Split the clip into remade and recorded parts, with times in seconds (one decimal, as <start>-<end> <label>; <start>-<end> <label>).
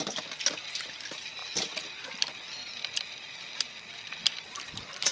0.0-5.1 recorded